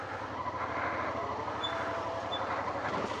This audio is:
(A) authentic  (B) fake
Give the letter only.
A